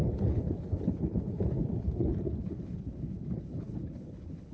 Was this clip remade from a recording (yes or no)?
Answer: yes